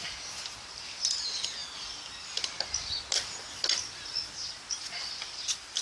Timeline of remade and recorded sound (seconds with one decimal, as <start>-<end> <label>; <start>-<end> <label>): 0.0-5.8 recorded